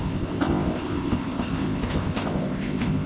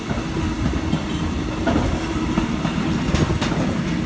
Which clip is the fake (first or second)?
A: first